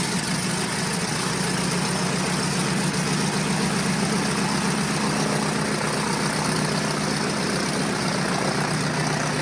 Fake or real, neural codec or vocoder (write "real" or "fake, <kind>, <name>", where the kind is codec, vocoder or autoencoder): real